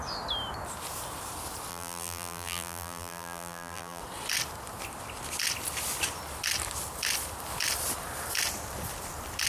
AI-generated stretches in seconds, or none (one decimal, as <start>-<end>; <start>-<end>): 1.7-4.0